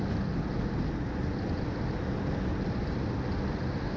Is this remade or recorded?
recorded